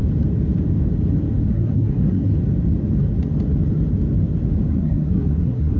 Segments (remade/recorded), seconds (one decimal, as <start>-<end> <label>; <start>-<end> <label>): 0.0-1.5 recorded; 1.5-2.3 remade; 2.3-4.7 recorded; 4.7-5.8 remade